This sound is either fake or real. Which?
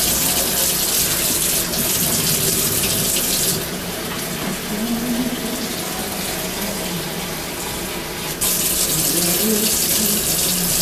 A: real